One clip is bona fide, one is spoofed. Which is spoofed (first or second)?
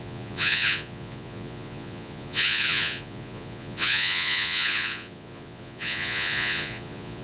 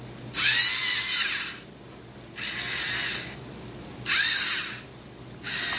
first